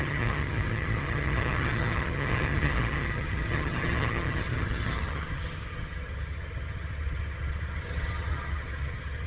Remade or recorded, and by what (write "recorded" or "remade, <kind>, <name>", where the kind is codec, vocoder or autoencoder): remade, vocoder, HiFi-GAN